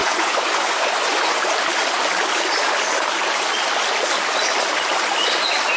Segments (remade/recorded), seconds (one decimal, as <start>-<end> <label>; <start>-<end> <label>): 0.0-1.4 remade; 1.4-5.8 recorded